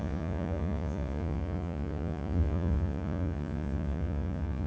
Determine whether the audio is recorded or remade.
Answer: remade